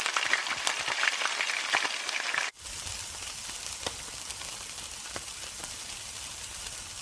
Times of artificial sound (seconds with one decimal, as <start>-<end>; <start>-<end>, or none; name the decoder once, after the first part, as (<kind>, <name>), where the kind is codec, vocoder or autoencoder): none